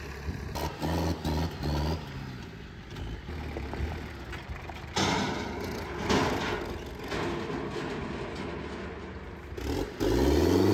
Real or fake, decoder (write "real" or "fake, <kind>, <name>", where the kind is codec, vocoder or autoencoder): real